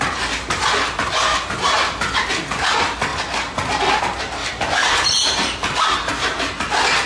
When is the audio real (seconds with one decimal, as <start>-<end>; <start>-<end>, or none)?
0.0-4.4; 5.9-7.1